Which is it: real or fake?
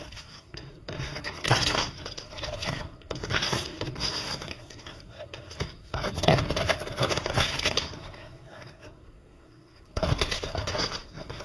fake